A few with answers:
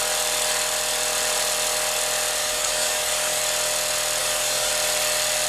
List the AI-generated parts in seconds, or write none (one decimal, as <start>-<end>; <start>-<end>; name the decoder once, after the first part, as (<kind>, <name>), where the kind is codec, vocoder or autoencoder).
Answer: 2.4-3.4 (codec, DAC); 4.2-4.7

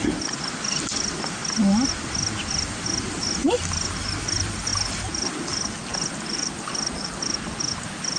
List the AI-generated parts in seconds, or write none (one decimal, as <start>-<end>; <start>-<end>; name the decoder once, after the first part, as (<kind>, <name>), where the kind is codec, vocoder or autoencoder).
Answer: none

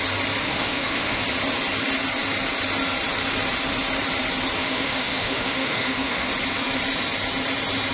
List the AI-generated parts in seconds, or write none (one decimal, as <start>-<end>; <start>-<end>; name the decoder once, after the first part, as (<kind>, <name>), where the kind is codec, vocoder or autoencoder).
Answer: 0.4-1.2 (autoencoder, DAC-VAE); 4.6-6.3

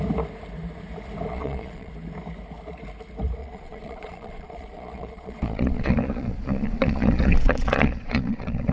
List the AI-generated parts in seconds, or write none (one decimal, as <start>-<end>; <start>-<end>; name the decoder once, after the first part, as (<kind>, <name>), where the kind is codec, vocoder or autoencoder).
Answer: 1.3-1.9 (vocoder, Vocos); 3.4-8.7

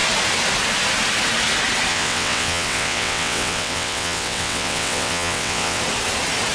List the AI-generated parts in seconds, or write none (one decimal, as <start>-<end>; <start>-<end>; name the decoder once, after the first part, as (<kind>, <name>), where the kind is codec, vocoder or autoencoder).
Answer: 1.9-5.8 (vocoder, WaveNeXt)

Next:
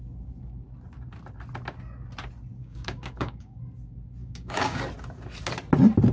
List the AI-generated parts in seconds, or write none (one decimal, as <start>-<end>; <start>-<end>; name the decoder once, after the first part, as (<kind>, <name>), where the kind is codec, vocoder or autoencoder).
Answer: 2.6-3.6 (codec, DAC); 4.2-4.8